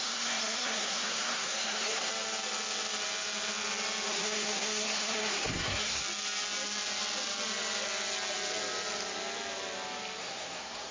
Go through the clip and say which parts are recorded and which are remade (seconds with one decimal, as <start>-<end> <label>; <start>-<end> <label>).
0.0-2.1 remade; 2.1-4.1 recorded; 4.1-6.0 remade; 6.0-10.2 recorded; 10.2-10.9 remade